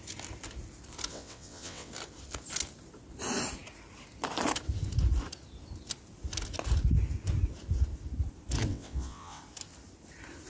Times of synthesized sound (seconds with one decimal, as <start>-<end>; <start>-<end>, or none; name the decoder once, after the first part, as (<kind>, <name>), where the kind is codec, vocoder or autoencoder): 1.1-1.9 (vocoder, WaveNeXt); 8.7-9.4